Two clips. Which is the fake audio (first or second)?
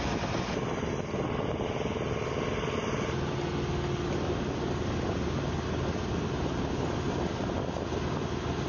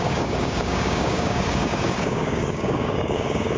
second